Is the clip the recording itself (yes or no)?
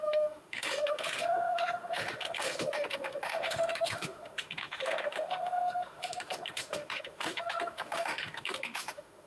no